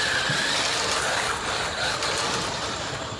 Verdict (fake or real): real